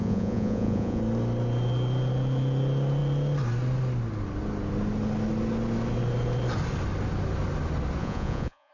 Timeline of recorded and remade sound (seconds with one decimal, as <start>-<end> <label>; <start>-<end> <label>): 0.0-1.0 remade; 1.0-8.0 recorded; 8.0-8.7 remade